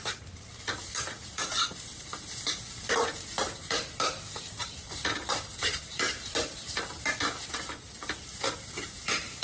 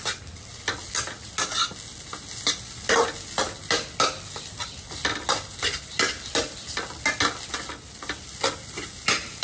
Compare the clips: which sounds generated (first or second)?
first